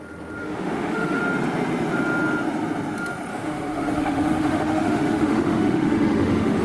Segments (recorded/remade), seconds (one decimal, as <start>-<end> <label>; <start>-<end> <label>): 0.0-0.4 recorded; 0.4-1.2 remade; 1.2-3.3 recorded; 3.3-6.6 remade